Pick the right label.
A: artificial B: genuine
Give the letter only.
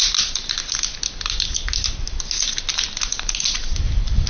B